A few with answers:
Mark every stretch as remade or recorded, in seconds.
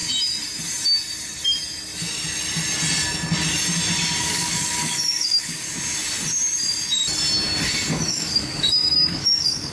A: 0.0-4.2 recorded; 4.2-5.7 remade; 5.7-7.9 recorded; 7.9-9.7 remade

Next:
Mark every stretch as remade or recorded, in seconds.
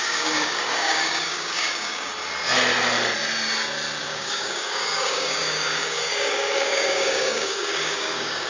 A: 0.0-2.1 remade; 2.1-4.0 recorded; 4.0-8.5 remade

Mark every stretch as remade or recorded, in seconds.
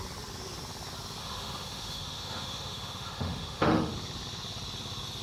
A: 0.0-1.2 recorded; 1.2-3.9 remade; 3.9-5.2 recorded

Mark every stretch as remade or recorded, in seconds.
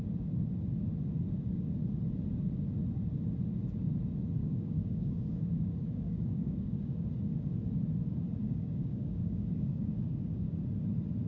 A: 0.0-4.4 recorded; 4.4-7.1 remade; 7.1-8.4 recorded; 8.4-10.5 remade; 10.5-11.3 recorded